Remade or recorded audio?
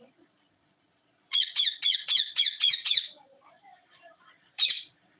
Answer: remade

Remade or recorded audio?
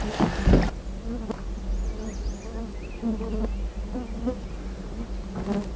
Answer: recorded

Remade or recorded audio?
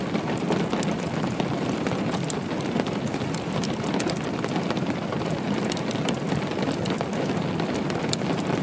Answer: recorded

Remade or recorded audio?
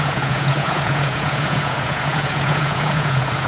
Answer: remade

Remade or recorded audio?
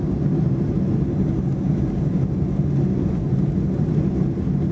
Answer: recorded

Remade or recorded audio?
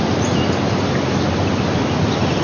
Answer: recorded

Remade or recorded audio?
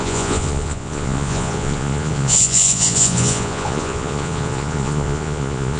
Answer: remade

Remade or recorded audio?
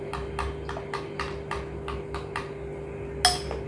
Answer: recorded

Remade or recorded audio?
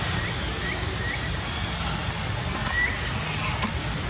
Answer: recorded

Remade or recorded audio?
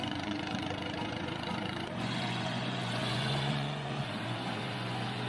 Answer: remade